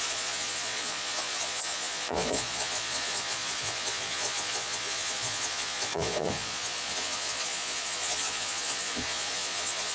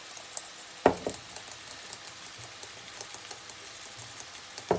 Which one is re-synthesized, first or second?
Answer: first